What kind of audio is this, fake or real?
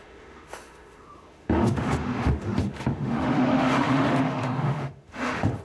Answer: fake